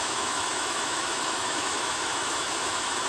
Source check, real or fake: fake